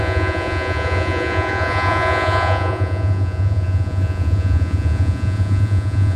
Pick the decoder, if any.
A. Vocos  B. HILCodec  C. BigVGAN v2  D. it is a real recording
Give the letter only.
A